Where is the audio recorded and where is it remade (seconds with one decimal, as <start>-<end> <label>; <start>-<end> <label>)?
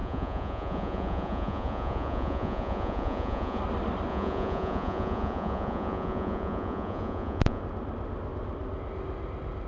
0.0-3.6 remade; 3.6-4.1 recorded; 4.1-7.6 remade; 7.6-9.7 recorded